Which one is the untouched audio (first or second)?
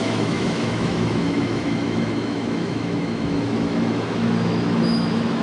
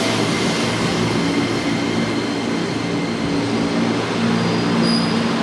second